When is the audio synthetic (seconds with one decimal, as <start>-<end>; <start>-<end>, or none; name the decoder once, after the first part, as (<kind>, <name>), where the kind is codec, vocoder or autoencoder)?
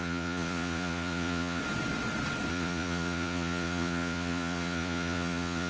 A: 0.0-1.6 (vocoder, Vocos); 2.5-5.7